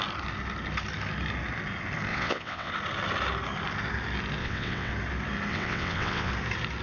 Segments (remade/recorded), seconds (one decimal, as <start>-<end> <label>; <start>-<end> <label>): 0.0-2.1 recorded; 2.1-2.7 remade; 2.7-4.4 recorded; 4.4-4.9 remade; 4.9-5.5 recorded; 5.5-6.3 remade; 6.3-6.8 recorded